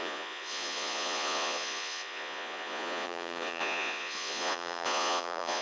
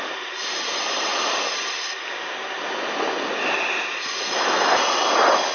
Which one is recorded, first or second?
second